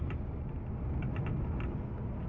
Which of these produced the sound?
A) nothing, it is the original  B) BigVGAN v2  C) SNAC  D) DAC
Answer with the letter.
A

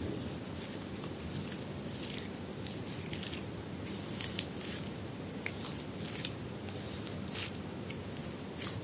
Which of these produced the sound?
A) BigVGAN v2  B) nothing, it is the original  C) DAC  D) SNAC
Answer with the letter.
A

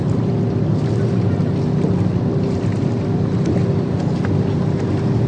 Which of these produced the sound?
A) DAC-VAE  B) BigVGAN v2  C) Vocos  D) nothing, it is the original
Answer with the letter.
D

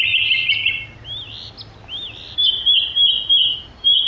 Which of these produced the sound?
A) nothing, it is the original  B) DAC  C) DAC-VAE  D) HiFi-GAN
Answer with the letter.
A